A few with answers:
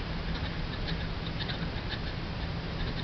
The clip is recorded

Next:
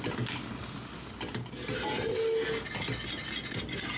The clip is recorded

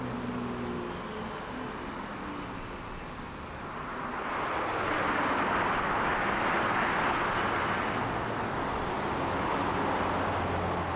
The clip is recorded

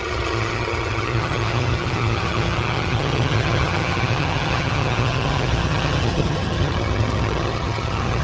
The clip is remade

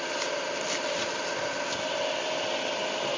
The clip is recorded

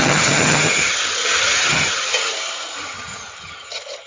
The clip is remade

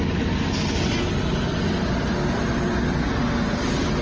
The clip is recorded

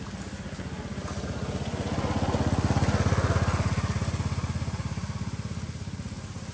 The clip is recorded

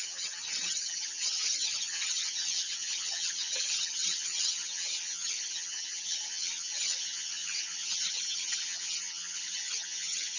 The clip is remade